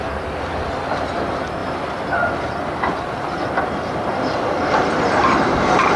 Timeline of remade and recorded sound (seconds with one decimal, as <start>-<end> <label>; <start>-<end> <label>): 0.0-6.0 recorded